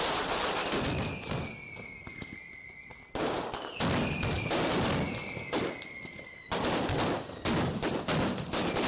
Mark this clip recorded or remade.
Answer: recorded